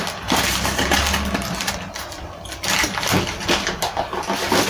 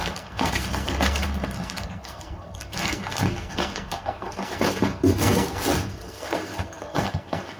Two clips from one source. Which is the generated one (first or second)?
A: second